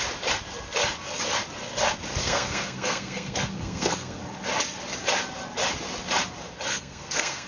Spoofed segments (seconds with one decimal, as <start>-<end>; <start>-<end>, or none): 2.2-4.2; 6.7-7.5